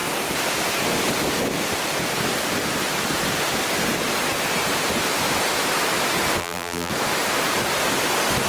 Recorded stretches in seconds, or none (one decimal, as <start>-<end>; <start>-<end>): 0.0-6.4; 6.9-8.5